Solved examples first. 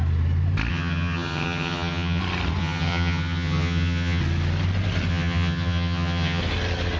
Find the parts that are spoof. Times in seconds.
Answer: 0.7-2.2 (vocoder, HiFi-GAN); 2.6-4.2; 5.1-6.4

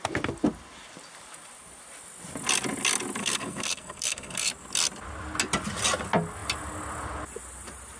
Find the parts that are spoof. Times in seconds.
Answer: 3.2-4.5 (codec, SNAC)

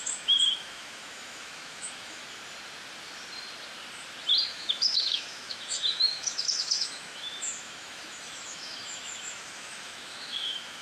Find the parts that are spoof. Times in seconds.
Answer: 0.0-2.2 (autoencoder, DAC-VAE); 4.5-10.8

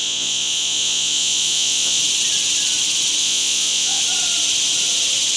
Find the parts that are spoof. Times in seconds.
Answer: 0.0-2.0 (vocoder, Vocos); 3.2-4.0